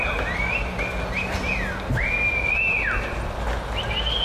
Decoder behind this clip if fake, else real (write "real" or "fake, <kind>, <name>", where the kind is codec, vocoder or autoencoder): real